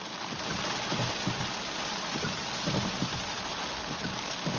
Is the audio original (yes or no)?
yes